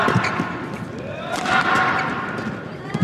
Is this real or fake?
real